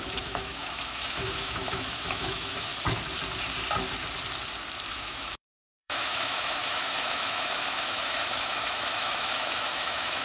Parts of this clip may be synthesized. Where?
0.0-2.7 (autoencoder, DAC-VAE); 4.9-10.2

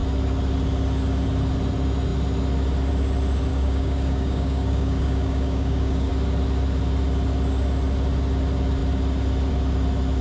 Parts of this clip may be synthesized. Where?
3.5-6.1 (codec, DAC)

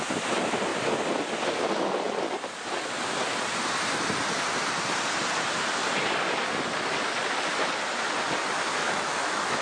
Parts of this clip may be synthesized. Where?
8.8-9.6 (autoencoder, DAC-VAE)

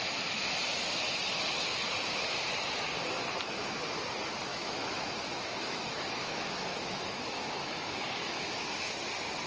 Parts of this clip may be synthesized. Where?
4.5-8.9 (autoencoder, DAC-VAE)

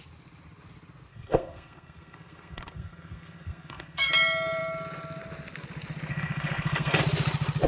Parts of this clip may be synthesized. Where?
1.1-4.1 (codec, SNAC); 6.1-7.0

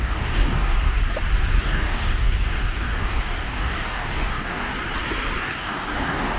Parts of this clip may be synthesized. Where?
0.0-1.0 (codec, DAC); 1.6-4.7; 5.4-6.4